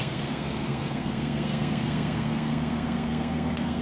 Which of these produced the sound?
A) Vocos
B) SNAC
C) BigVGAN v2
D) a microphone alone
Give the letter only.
B